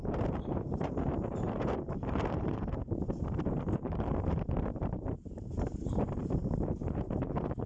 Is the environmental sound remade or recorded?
remade